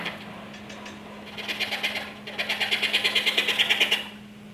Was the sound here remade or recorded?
recorded